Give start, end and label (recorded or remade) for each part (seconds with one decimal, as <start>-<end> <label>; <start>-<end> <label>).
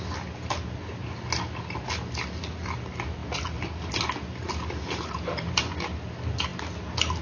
0.0-7.2 recorded